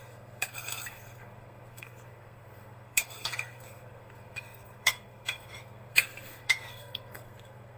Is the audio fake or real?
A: fake